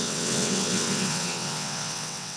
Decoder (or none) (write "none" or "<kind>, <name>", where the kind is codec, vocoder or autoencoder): vocoder, WaveNeXt